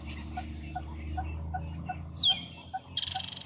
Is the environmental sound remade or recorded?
recorded